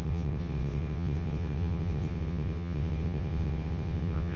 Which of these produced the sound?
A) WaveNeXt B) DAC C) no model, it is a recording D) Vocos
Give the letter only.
A